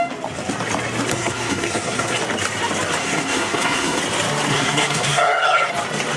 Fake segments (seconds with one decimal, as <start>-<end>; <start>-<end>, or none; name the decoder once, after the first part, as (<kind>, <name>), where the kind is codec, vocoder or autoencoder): 1.1-2.2 (codec, SNAC); 3.0-4.0; 4.5-5.7